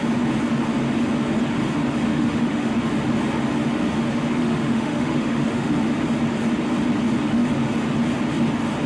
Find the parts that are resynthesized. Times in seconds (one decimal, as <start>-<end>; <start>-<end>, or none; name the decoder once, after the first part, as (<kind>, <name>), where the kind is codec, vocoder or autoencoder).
2.1-2.7 (autoencoder, DAC-VAE); 4.4-5.7